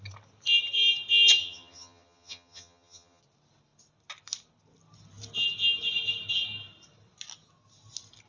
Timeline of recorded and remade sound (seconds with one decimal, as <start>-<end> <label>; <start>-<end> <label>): 0.0-1.4 recorded; 1.4-3.2 remade; 3.2-8.3 recorded